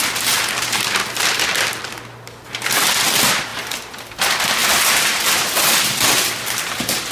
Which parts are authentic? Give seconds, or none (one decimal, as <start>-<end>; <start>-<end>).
0.0-1.0; 1.8-3.5; 4.1-4.6

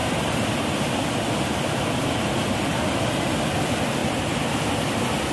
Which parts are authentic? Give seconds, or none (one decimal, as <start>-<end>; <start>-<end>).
3.2-4.0

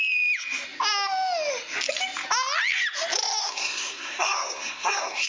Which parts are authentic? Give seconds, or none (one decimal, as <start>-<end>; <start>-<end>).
0.0-3.4

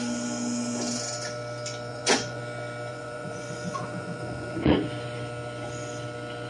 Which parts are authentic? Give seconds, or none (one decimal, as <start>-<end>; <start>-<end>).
0.0-1.9; 2.4-2.9; 4.8-6.5

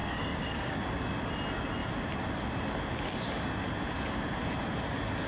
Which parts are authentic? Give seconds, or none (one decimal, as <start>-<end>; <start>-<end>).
0.8-5.3

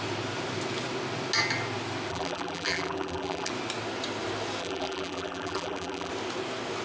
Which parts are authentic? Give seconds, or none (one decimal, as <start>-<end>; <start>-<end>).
0.0-2.1; 3.5-4.6; 6.1-6.8